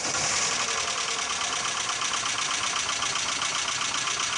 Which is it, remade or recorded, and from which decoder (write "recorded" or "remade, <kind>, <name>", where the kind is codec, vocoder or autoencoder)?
recorded